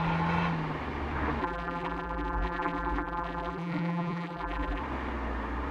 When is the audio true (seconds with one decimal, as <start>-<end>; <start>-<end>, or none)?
0.0-1.4; 4.8-5.7